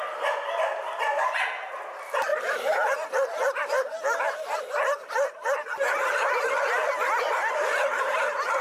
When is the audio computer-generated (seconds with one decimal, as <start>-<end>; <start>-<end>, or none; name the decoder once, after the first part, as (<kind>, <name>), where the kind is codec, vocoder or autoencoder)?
none